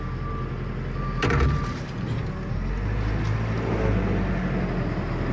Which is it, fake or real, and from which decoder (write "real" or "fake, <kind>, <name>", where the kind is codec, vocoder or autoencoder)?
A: real